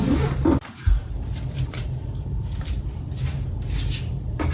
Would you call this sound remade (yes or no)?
yes